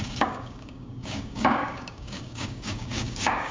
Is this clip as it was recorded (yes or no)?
no